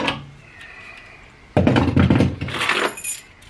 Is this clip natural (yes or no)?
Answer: yes